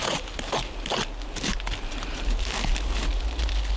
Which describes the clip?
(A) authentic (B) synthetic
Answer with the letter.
A